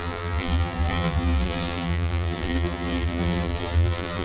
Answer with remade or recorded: remade